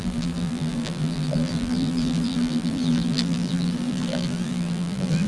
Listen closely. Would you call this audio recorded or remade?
remade